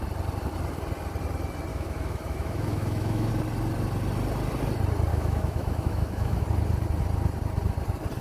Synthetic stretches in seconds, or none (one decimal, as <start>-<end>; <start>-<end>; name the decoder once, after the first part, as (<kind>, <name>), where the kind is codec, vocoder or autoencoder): 1.7-3.3 (autoencoder, DAC-VAE); 5.1-6.4